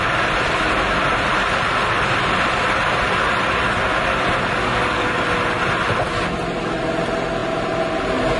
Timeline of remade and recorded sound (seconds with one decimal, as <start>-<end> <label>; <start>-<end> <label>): 0.0-4.6 recorded; 4.6-5.2 remade; 5.2-8.4 recorded